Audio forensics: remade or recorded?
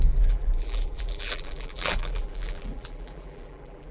remade